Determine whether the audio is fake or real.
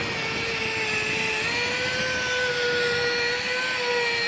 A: real